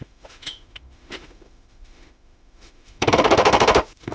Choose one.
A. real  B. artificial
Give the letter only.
B